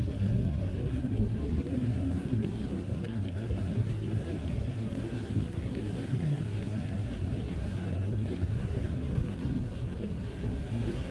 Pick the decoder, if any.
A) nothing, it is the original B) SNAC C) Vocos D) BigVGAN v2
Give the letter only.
B